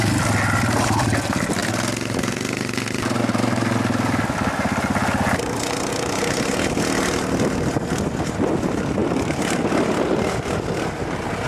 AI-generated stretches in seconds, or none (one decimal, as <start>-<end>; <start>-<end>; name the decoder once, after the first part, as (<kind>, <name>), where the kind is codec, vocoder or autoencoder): none